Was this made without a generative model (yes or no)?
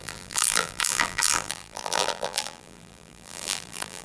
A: no